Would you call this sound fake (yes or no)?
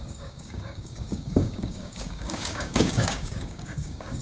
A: yes